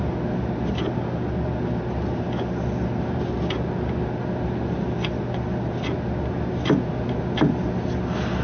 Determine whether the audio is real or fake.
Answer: real